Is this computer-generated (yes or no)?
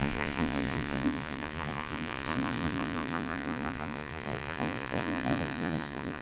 yes